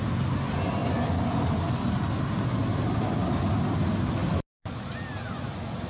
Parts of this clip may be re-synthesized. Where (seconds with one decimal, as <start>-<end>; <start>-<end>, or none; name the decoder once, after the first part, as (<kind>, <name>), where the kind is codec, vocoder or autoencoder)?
2.6-3.6 (vocoder, BigVGAN v2)